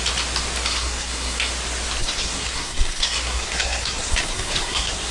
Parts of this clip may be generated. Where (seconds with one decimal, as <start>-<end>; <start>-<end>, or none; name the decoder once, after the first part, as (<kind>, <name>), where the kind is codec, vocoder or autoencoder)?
0.7-1.5 (codec, SNAC); 2.0-5.1